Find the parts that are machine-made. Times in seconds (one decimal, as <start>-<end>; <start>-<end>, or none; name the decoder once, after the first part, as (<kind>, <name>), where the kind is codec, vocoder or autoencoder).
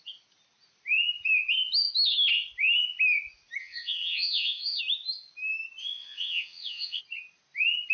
3.6-4.8 (vocoder, WaveNeXt); 5.8-7.0